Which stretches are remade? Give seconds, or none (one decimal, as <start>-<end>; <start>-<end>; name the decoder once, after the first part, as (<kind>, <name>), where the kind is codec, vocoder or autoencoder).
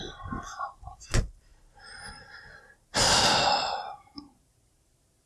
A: none